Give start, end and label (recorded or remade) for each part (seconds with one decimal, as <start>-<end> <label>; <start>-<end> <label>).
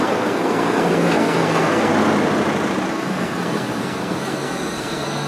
0.0-1.9 remade; 1.9-2.9 recorded; 2.9-5.3 remade